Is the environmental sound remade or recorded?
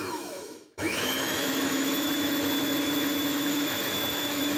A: remade